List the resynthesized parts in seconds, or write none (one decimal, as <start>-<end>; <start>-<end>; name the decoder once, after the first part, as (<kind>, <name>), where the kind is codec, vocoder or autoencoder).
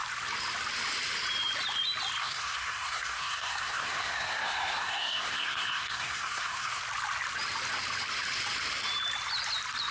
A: 2.2-6.8 (codec, SNAC)